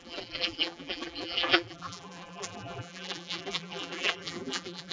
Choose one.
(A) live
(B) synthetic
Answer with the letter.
B